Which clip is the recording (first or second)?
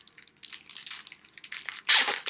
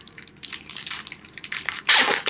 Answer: first